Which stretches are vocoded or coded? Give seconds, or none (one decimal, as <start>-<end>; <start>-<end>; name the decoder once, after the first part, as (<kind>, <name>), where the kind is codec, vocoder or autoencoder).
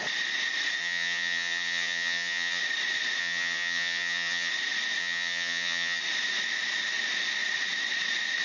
0.8-2.6 (vocoder, HiFi-GAN); 3.2-4.5; 5.0-6.0